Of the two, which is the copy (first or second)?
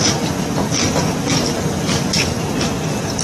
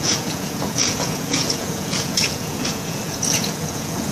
second